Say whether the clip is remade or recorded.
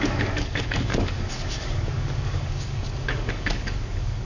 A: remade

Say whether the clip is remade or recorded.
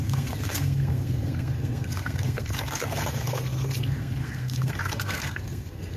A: remade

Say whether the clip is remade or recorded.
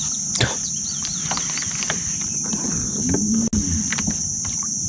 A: recorded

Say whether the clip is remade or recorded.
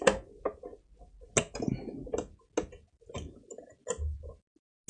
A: recorded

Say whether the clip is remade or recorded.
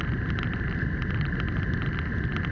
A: recorded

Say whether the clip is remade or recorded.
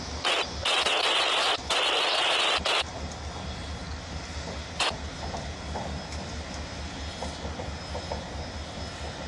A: recorded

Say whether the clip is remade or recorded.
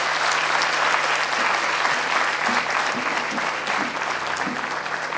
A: recorded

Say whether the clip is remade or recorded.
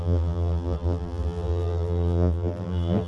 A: remade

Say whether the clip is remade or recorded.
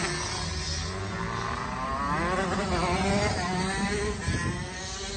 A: recorded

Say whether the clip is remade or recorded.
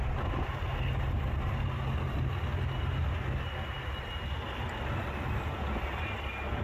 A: recorded